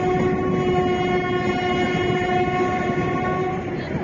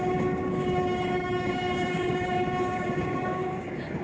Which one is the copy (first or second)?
second